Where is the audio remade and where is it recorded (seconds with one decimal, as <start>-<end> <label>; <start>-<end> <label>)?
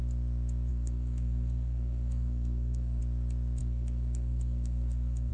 0.0-0.7 recorded; 0.7-3.0 remade; 3.0-3.6 recorded; 3.6-5.3 remade